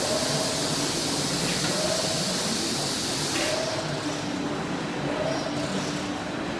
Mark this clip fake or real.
real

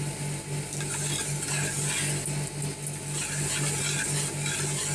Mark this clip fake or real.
real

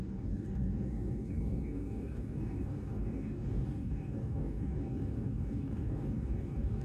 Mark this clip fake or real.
fake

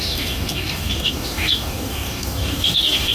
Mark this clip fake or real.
fake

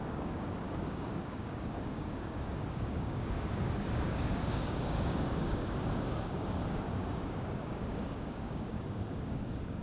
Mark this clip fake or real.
fake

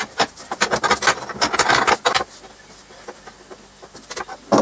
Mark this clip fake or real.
real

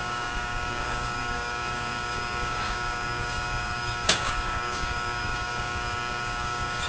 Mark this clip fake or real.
fake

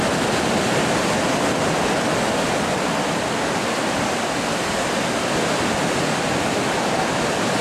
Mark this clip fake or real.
real